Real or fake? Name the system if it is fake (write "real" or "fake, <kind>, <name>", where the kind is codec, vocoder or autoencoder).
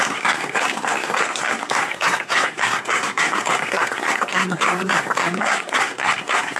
fake, codec, SNAC